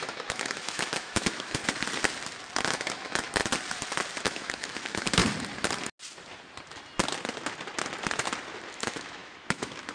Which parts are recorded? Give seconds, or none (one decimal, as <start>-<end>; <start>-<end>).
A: 1.6-2.7; 3.4-4.2; 5.2-8.7